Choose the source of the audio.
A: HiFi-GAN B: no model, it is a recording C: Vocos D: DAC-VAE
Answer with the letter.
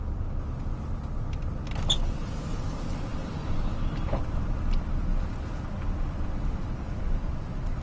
B